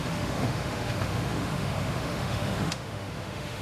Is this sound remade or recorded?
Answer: remade